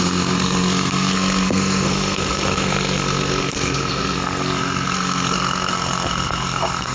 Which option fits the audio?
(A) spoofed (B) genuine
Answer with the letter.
A